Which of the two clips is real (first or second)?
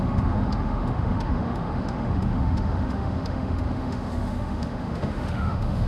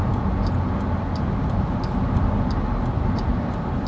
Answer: second